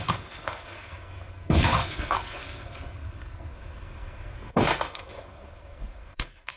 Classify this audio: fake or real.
fake